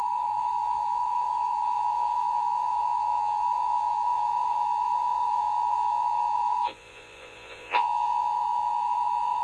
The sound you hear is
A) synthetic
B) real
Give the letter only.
A